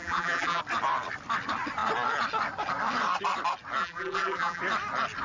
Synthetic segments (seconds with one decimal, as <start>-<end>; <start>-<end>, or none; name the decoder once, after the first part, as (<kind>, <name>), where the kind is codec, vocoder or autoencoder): 0.0-0.6 (vocoder, BigVGAN v2); 3.8-4.6